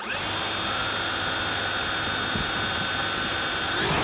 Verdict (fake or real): real